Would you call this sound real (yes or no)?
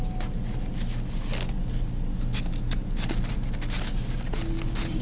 yes